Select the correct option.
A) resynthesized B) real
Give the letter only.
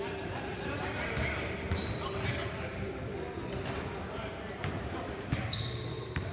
A